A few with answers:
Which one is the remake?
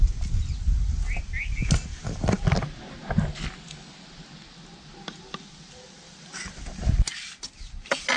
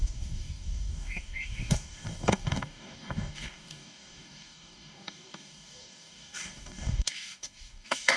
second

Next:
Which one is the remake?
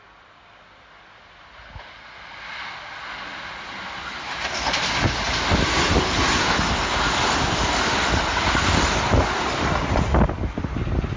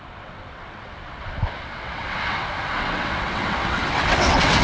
second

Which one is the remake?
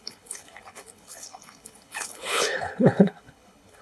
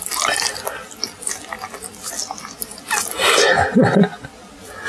first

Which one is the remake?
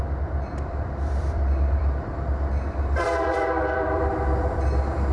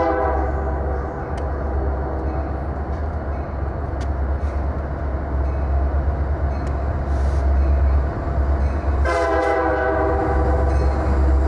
first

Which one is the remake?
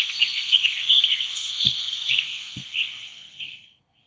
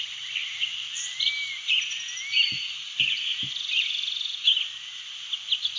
first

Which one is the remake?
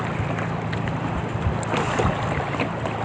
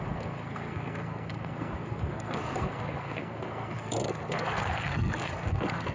second